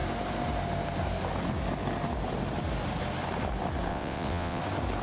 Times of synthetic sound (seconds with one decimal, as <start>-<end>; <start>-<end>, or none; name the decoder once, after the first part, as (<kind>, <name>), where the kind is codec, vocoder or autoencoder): 3.9-4.6 (vocoder, WaveNeXt)

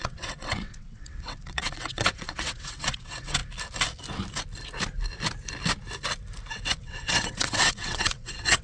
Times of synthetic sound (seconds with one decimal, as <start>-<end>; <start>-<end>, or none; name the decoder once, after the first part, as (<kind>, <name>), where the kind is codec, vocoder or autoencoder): 0.0-3.4 (vocoder, WaveNeXt); 6.5-8.6